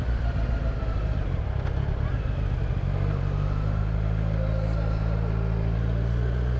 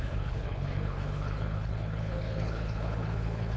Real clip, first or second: first